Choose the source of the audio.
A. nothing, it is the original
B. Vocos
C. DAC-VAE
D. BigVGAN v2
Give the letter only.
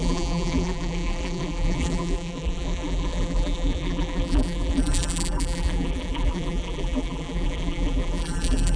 D